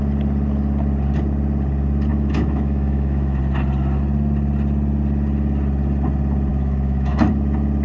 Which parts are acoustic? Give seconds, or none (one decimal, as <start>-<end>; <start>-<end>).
0.0-2.1; 3.4-6.5; 7.3-7.8